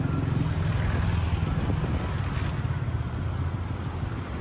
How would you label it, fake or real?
real